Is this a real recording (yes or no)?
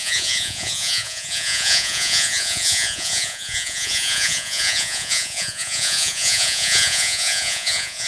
no